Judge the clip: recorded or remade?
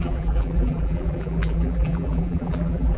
remade